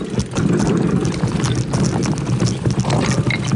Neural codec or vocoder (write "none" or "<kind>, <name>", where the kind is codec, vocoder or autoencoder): none